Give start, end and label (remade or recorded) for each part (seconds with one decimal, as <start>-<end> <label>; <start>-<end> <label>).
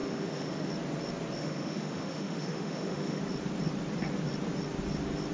0.0-0.7 remade; 0.7-1.4 recorded; 1.4-3.2 remade; 3.2-5.3 recorded